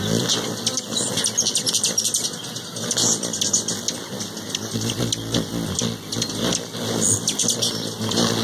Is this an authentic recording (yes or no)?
yes